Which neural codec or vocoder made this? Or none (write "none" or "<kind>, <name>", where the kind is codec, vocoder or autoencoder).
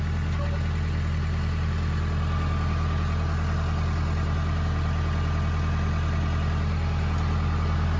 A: none